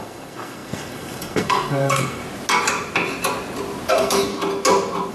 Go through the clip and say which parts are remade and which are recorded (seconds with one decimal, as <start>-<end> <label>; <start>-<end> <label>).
0.0-2.2 remade; 2.2-3.9 recorded; 3.9-4.3 remade; 4.3-5.1 recorded